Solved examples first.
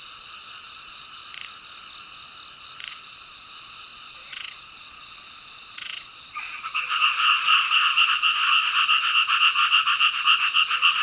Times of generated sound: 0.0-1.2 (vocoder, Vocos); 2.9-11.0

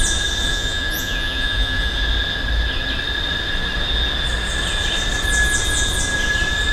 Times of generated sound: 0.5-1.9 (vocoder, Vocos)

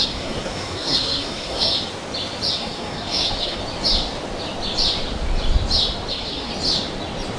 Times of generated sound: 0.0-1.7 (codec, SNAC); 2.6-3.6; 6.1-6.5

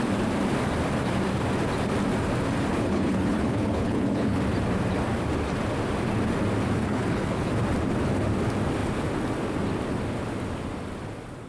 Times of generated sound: 2.7-4.4 (codec, HILCodec); 6.8-7.5

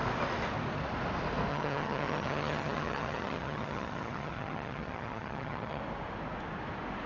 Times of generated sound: 1.5-5.8 (vocoder, HiFi-GAN)

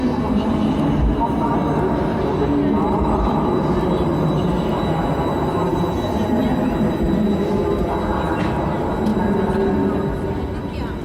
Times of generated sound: 2.8-4.5 (vocoder, BigVGAN v2)